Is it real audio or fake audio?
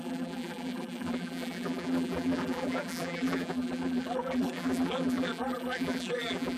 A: fake